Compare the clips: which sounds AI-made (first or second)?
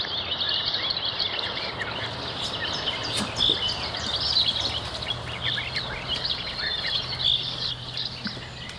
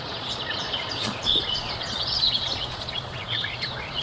second